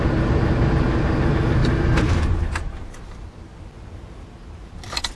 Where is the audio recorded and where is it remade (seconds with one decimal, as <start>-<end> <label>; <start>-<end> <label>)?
0.0-5.2 recorded